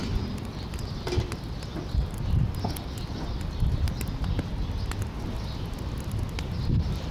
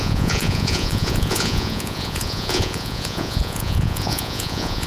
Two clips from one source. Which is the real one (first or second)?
first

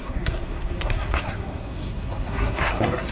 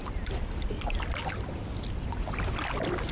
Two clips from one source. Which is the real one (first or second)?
second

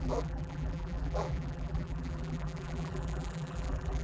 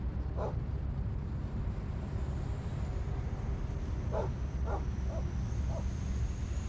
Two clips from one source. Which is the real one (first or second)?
second